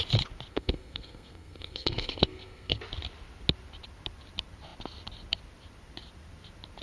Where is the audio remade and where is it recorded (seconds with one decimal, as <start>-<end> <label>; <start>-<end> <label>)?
0.0-0.5 recorded; 0.5-2.8 remade; 2.8-6.8 recorded